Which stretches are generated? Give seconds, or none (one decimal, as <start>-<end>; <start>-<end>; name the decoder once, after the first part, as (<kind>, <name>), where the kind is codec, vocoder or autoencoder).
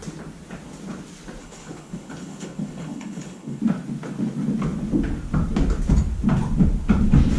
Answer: 1.4-3.6 (codec, HILCodec)